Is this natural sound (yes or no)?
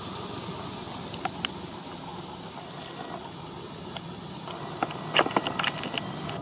yes